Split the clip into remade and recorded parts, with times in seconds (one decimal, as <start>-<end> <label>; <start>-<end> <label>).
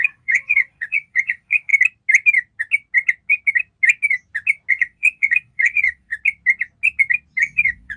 0.0-1.7 remade; 1.7-4.7 recorded; 4.7-6.1 remade; 6.1-7.4 recorded; 7.4-8.0 remade